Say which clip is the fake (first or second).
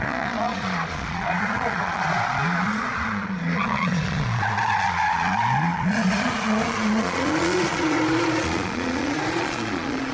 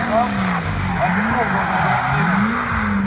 first